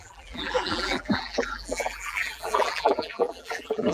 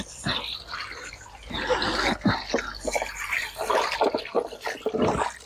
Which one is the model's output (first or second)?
first